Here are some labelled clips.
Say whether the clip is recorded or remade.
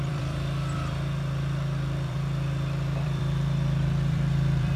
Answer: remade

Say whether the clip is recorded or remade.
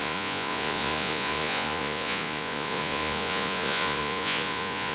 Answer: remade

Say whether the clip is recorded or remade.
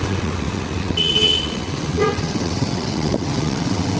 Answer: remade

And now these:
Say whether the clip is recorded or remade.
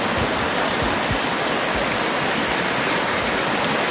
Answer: recorded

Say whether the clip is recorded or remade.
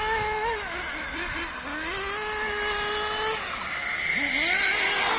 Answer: recorded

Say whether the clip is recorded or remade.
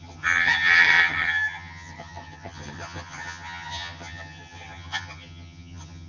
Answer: remade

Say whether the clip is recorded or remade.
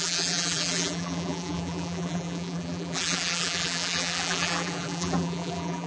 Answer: remade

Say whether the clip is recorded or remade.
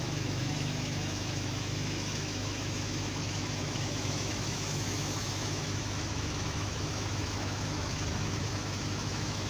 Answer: remade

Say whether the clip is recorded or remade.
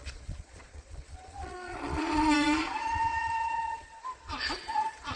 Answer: remade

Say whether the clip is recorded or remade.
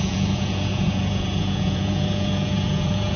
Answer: remade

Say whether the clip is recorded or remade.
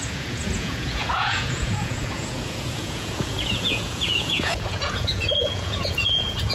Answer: remade